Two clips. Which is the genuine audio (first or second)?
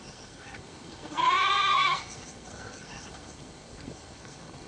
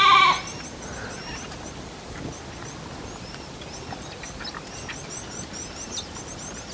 second